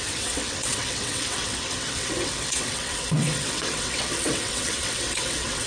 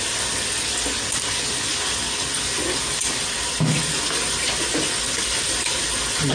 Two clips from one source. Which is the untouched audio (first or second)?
second